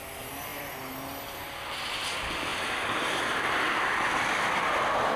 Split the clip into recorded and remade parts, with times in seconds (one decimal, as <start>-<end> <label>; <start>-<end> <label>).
0.0-5.2 recorded

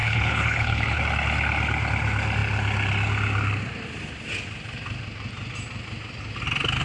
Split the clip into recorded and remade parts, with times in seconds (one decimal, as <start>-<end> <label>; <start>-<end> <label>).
0.0-1.0 remade; 1.0-6.8 recorded

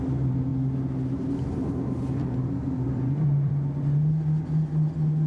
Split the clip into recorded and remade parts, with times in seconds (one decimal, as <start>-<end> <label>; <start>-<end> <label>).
0.0-2.0 recorded; 2.0-3.5 remade; 3.5-5.3 recorded

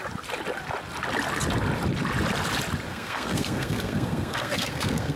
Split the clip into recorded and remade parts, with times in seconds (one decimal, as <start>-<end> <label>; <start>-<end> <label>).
0.0-2.9 recorded; 2.9-5.2 remade

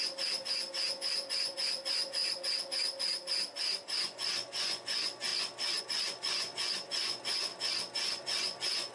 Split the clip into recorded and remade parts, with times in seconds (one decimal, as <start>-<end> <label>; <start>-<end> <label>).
0.0-2.2 remade; 2.2-4.0 recorded; 4.0-5.3 remade; 5.3-5.8 recorded; 5.8-7.5 remade; 7.5-8.1 recorded; 8.1-8.9 remade